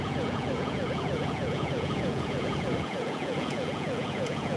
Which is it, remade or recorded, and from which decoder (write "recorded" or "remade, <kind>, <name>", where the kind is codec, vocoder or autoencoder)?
remade, vocoder, Vocos